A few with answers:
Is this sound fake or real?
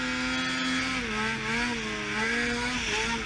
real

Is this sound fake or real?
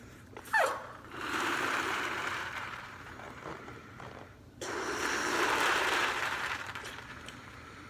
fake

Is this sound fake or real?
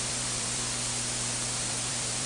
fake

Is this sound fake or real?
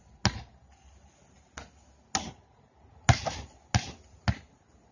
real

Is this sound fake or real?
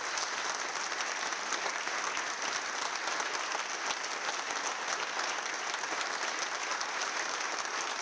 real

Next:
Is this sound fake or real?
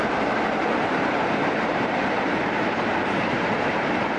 fake